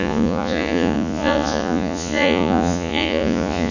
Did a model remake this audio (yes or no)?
yes